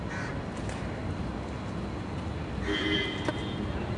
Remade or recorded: recorded